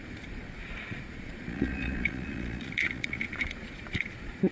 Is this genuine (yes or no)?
no